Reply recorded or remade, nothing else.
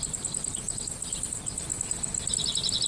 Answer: recorded